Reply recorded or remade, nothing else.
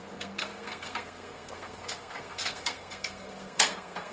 remade